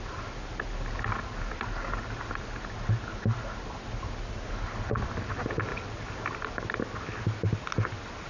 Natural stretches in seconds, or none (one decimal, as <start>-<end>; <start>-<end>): 0.0-5.7; 6.8-8.3